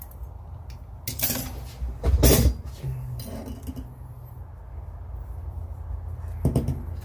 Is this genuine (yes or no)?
yes